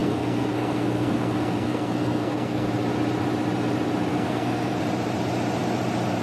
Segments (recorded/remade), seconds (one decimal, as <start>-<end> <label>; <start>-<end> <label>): 0.0-2.7 remade; 2.7-4.1 recorded; 4.1-4.8 remade; 4.8-6.2 recorded